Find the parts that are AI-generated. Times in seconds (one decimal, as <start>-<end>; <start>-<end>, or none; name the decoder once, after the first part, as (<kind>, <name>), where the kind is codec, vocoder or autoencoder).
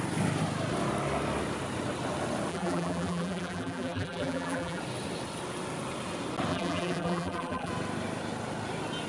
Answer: 2.5-4.8 (vocoder, BigVGAN v2); 6.5-7.7